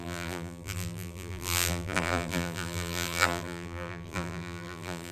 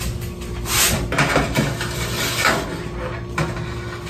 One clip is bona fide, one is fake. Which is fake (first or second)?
first